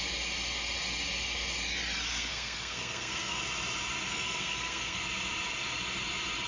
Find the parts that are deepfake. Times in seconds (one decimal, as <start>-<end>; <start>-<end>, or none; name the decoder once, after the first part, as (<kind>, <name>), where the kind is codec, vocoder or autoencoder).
2.1-3.4 (codec, SNAC); 4.1-5.0